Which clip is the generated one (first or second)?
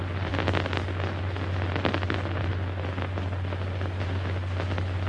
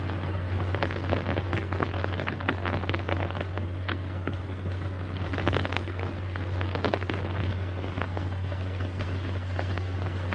second